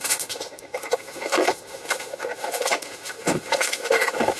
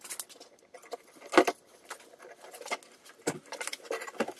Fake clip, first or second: first